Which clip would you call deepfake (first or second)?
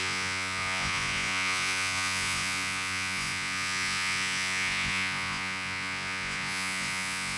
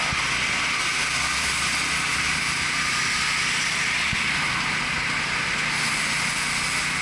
first